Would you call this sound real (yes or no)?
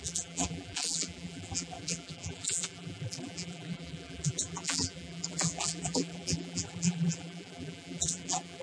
no